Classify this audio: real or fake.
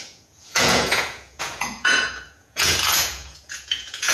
fake